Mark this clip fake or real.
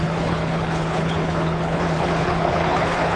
fake